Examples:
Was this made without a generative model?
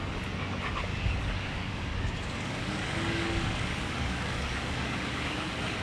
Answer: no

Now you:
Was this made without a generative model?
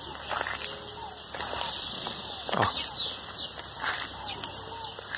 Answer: yes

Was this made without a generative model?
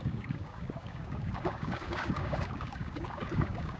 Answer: no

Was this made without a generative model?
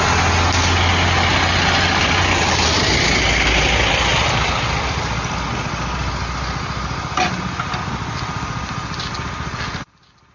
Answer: yes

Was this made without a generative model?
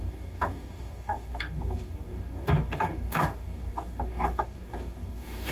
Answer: no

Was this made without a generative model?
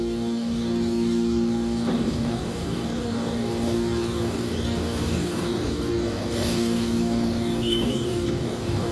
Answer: no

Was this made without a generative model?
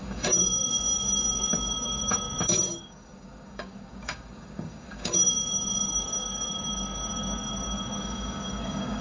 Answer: no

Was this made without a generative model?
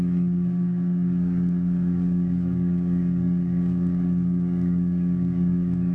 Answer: no